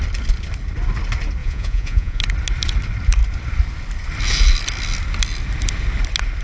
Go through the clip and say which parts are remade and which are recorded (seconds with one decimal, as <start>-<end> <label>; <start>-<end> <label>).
0.0-1.4 recorded; 1.4-2.2 remade; 2.2-6.4 recorded